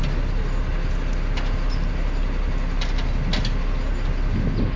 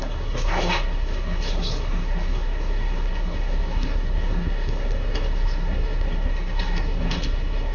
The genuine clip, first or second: first